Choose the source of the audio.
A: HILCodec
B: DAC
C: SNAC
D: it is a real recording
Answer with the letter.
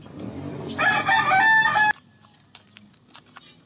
D